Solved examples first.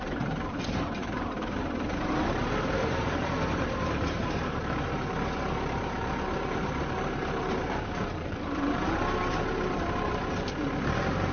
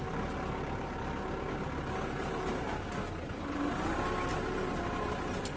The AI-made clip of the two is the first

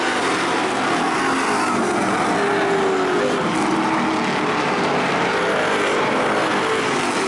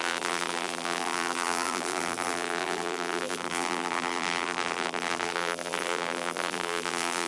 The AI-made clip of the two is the second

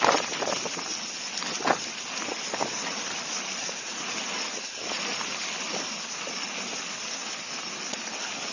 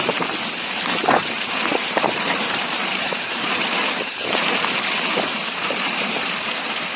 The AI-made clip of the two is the second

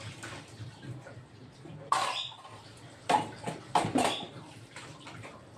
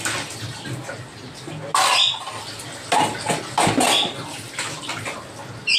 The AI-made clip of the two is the first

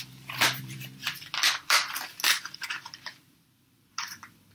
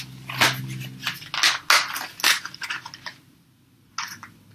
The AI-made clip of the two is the first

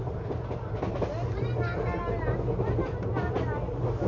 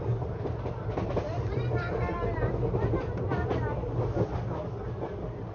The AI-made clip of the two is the second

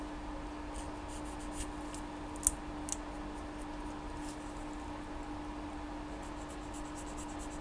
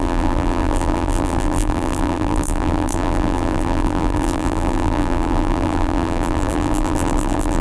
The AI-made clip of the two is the second